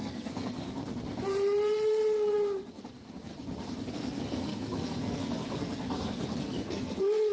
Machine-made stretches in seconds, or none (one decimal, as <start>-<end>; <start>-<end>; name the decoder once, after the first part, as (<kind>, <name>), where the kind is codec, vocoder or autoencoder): 0.0-0.8 (codec, SNAC); 2.7-3.3; 3.9-7.3